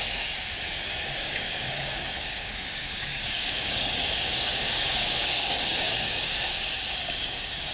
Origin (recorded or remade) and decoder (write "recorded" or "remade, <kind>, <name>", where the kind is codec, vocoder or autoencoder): remade, codec, DAC